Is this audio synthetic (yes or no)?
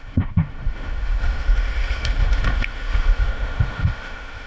yes